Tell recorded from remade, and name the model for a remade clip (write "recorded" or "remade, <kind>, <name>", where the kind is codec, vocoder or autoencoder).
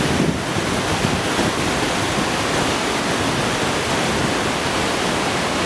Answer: recorded